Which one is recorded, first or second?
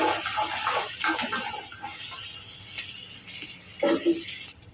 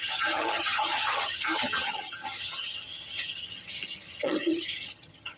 first